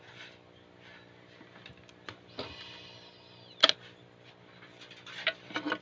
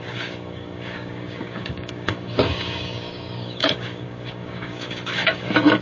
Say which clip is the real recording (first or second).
first